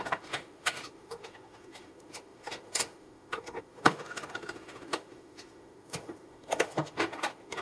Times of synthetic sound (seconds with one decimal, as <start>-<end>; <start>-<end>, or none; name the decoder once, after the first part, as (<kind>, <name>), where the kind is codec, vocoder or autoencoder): 0.0-7.6 (autoencoder, DAC-VAE)